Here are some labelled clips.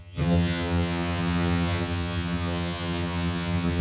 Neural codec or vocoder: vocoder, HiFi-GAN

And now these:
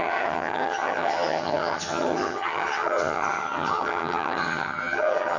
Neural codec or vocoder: vocoder, HiFi-GAN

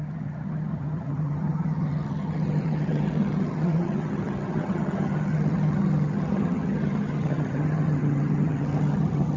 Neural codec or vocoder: vocoder, HiFi-GAN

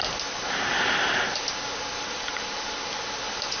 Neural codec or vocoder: none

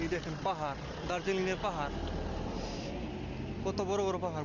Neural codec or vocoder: none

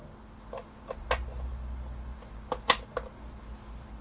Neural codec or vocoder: none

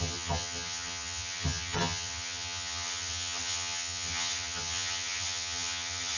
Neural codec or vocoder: vocoder, HiFi-GAN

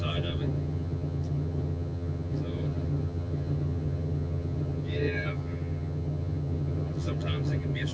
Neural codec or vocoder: vocoder, HiFi-GAN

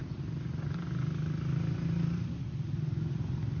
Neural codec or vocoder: none